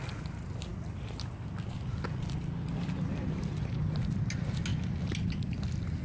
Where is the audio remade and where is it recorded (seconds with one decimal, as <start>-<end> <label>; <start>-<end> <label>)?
0.0-6.0 recorded